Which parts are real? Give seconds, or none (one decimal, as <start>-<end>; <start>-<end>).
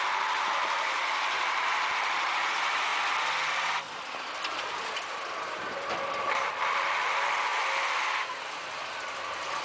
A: 0.0-9.6